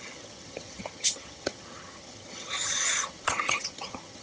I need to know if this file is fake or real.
fake